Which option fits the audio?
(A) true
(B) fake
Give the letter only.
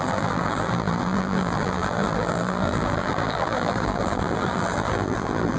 B